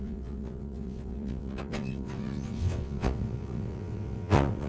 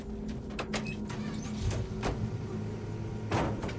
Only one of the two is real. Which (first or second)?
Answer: second